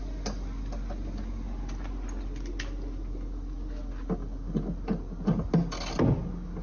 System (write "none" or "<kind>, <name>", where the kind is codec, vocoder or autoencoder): none